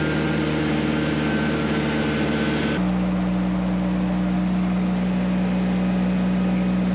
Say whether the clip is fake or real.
real